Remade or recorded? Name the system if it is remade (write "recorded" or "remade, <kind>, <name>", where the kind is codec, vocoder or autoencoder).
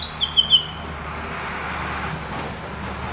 recorded